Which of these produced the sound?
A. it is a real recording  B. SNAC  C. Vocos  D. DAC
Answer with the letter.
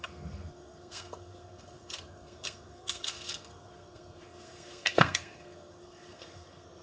B